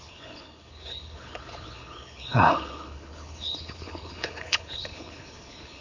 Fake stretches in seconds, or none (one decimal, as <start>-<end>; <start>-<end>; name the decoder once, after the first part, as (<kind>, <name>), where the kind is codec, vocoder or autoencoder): 0.0-5.8 (codec, HILCodec)